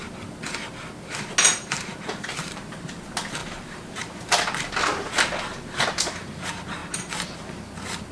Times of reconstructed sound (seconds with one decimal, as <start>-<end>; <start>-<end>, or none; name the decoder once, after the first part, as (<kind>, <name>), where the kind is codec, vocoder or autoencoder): 1.5-2.6 (vocoder, BigVGAN v2); 3.4-4.7